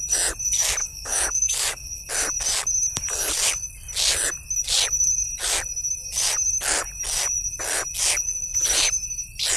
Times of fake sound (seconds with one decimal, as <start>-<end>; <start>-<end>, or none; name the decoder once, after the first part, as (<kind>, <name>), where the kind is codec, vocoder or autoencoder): 0.8-2.1 (codec, DAC)